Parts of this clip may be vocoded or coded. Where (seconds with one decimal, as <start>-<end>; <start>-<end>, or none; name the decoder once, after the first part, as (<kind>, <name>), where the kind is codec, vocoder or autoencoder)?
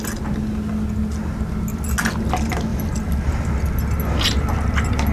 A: 2.7-3.5 (vocoder, BigVGAN v2)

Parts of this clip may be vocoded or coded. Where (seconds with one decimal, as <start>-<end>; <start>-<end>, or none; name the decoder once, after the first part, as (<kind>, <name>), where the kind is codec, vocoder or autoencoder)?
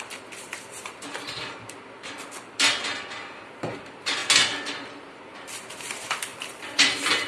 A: 0.0-4.2 (vocoder, BigVGAN v2); 4.7-7.3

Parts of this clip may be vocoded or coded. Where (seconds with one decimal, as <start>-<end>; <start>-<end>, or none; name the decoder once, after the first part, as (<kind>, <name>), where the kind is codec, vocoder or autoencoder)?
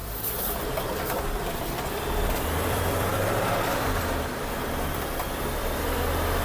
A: 0.0-6.4 (vocoder, BigVGAN v2)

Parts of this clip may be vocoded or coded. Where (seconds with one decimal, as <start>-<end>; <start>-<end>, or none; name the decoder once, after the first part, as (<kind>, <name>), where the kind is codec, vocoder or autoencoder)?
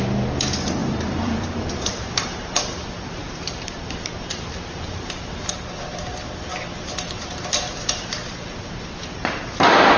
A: 0.8-5.4 (vocoder, BigVGAN v2)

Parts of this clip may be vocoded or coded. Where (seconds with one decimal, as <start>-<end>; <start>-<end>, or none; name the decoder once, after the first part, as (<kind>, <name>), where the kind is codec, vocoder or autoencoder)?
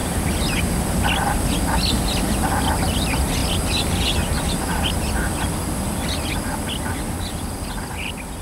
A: none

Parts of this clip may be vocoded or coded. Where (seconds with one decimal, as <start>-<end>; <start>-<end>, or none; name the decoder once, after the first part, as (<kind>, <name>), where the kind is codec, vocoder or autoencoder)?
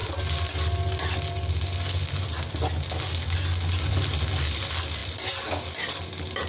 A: 5.0-5.7 (vocoder, BigVGAN v2)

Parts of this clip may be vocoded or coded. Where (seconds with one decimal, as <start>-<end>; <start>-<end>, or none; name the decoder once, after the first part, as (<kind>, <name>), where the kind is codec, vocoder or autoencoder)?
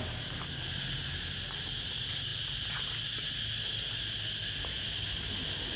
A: none